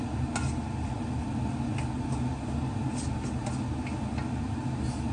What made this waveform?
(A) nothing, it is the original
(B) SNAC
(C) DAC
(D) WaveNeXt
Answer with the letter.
A